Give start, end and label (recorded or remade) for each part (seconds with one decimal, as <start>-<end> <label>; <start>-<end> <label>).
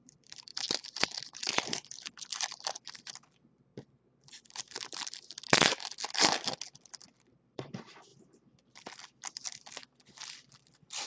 0.0-3.7 remade; 3.7-6.9 recorded; 6.9-11.1 remade